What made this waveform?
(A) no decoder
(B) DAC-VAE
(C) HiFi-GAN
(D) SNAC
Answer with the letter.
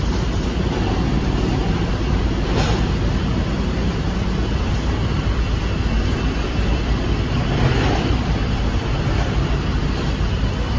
A